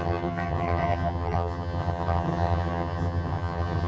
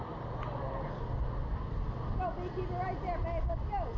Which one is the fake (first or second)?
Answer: first